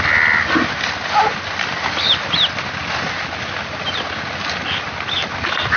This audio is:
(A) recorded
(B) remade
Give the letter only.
A